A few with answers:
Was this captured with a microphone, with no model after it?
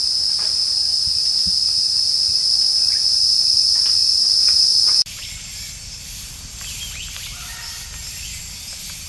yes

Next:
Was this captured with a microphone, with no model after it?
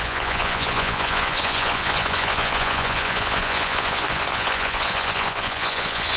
no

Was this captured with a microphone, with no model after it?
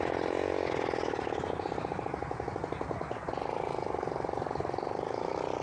yes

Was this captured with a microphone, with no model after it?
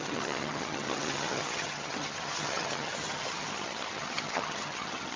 no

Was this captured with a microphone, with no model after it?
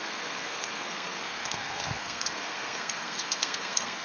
no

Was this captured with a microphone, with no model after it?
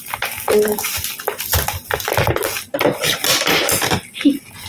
yes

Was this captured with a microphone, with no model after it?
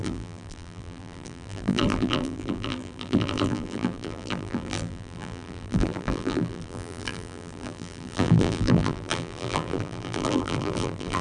no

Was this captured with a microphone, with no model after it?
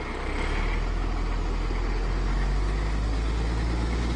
yes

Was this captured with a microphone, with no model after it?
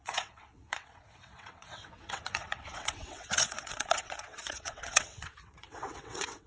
no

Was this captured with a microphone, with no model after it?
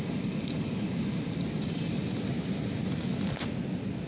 yes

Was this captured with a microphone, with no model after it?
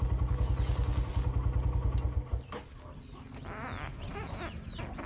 yes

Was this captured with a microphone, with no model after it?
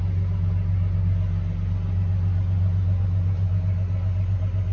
yes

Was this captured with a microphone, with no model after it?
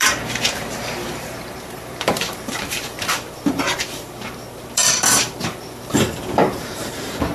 no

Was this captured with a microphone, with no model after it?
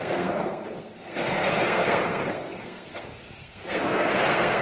no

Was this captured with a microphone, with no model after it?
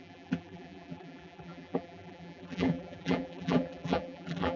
no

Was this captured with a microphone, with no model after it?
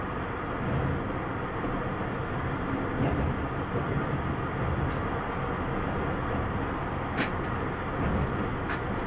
yes